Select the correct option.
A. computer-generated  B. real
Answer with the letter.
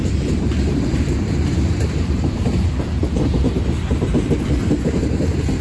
A